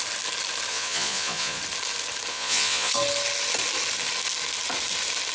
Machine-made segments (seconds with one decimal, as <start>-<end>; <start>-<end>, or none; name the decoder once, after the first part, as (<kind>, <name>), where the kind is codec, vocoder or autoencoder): 0.7-1.6 (vocoder, Vocos); 2.3-2.9